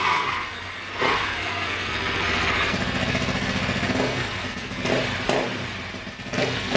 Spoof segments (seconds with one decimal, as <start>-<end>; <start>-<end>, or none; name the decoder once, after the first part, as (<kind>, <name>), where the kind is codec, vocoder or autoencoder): 0.0-4.9 (codec, SNAC); 6.1-6.8